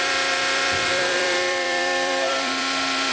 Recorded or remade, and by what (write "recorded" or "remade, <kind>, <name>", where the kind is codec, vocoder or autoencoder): remade, vocoder, BigVGAN v2